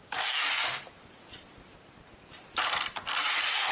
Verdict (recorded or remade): recorded